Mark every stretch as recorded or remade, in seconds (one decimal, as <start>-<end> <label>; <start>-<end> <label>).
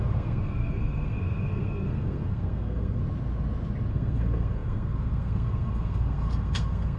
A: 0.0-3.0 remade; 3.0-3.9 recorded; 3.9-7.0 remade